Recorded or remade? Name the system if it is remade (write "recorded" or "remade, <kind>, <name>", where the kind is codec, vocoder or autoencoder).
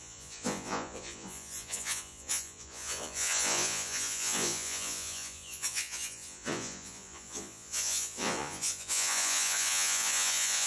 remade, vocoder, Vocos